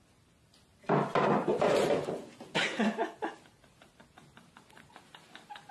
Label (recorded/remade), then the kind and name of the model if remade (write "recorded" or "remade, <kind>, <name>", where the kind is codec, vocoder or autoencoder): recorded